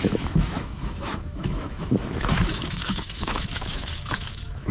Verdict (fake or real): fake